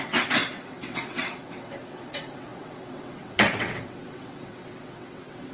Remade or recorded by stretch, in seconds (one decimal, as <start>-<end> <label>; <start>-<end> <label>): 0.0-5.5 remade